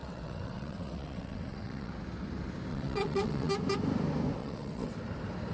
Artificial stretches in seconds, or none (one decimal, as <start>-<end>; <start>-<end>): 0.0-1.9; 2.7-3.5; 4.4-4.9